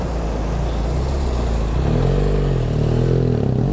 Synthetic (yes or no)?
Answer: no